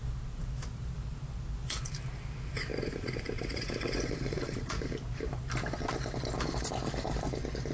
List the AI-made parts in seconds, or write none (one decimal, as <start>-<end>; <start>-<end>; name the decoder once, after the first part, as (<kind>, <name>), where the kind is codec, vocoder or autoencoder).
2.7-4.8 (vocoder, Vocos)